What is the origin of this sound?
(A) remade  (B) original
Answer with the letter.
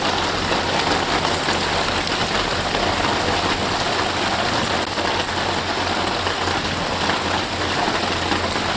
B